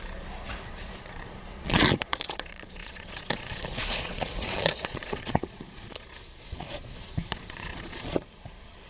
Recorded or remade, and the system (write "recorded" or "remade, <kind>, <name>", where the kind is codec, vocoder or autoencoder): remade, vocoder, Vocos